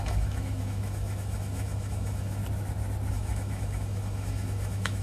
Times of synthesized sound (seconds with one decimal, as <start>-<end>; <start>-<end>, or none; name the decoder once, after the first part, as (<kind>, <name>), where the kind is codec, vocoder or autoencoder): 0.0-2.4 (autoencoder, DAC-VAE); 3.1-5.0